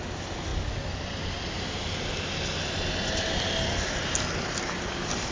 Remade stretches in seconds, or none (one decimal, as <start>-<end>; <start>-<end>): none